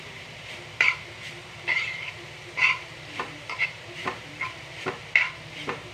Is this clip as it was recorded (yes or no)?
no